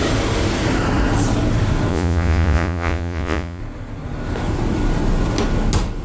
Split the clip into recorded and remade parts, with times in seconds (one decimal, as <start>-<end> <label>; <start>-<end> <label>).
0.0-1.9 recorded; 1.9-3.6 remade; 3.6-6.0 recorded